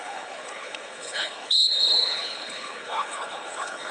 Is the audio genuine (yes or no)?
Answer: no